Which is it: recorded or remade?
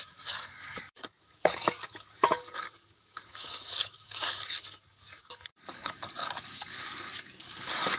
remade